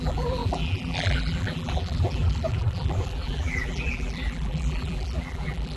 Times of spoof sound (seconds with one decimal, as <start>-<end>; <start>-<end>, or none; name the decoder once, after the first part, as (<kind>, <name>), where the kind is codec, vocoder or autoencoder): 0.0-5.8 (vocoder, BigVGAN v2)